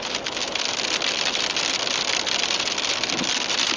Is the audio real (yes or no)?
yes